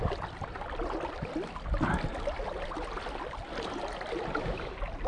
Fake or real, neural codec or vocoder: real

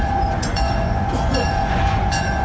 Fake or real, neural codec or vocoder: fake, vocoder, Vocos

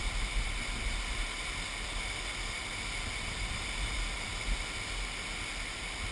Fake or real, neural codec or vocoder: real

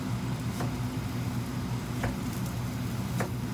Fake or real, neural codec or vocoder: real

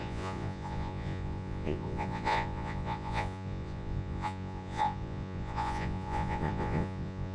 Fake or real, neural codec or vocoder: fake, vocoder, Vocos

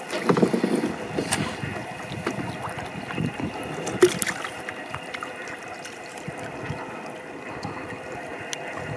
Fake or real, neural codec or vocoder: real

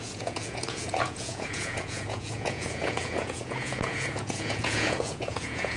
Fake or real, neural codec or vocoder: fake, vocoder, Vocos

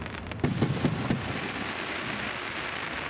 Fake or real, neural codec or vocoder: real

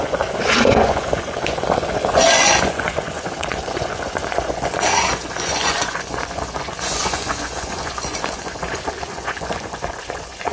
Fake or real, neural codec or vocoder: fake, vocoder, Vocos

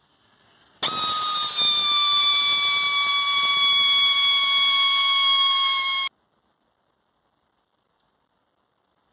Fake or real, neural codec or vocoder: real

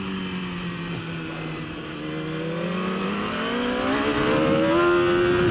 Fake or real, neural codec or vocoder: real